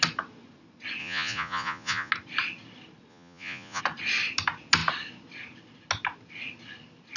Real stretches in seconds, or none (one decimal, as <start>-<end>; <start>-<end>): 0.0-1.0; 2.1-3.1; 3.8-7.2